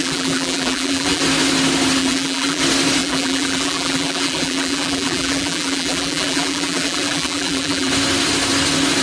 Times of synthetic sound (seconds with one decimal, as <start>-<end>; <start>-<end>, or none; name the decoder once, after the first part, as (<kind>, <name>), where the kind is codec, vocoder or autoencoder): 0.0-1.2 (vocoder, BigVGAN v2); 2.0-2.6; 3.0-7.9